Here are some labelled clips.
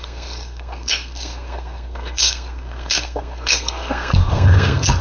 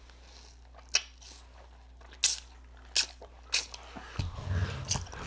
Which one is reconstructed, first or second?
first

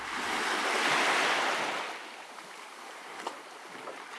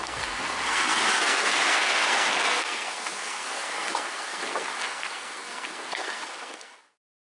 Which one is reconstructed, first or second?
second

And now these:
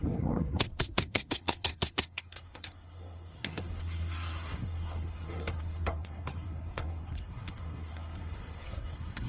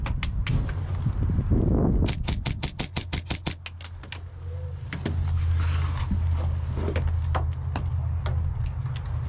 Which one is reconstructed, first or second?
first